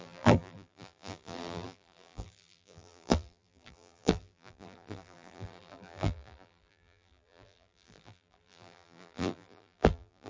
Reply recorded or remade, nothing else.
remade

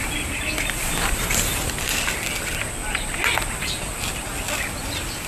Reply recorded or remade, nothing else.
recorded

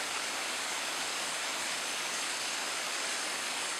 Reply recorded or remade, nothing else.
remade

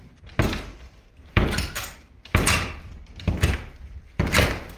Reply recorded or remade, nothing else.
remade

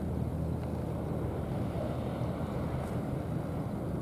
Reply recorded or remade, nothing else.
recorded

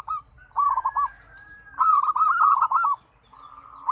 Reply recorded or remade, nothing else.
remade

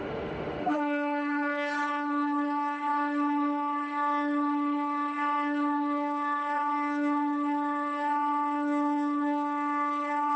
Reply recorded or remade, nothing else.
remade